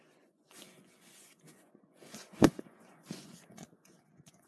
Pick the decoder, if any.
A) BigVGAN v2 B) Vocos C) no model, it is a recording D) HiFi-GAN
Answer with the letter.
B